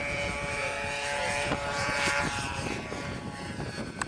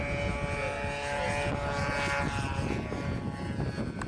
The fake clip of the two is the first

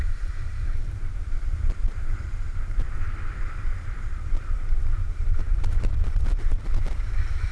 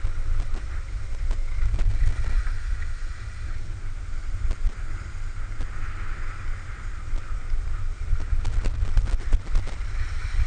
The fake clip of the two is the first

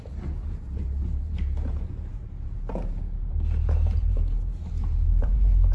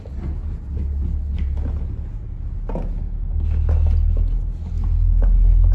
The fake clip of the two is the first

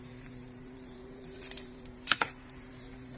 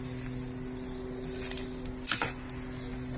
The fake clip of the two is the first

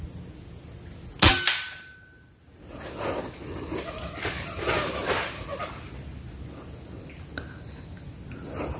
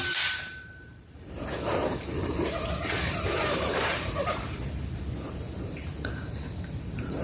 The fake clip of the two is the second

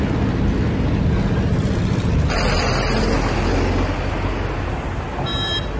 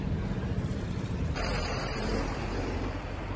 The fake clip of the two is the second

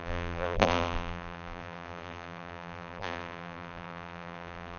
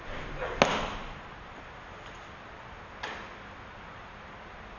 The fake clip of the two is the first